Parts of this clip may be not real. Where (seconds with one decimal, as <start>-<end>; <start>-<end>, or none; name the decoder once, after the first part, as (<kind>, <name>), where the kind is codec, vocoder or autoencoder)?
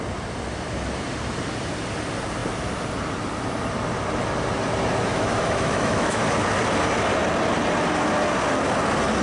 5.1-6.2 (autoencoder, DAC-VAE)